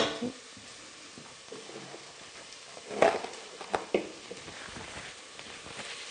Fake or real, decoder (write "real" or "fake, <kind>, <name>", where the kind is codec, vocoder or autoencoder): real